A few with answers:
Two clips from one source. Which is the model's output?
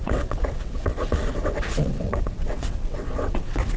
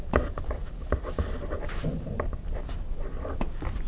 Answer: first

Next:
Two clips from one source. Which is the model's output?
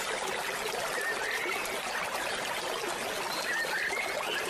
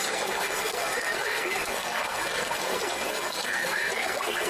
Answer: second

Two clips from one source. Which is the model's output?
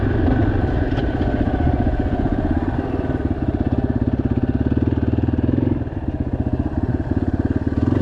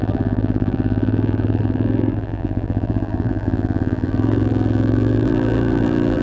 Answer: second